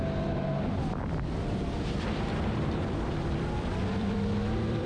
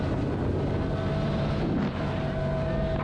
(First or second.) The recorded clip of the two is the second